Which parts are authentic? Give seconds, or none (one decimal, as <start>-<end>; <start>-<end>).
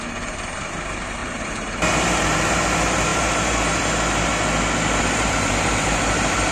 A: 4.3-5.0